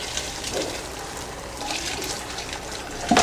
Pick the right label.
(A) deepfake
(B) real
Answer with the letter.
A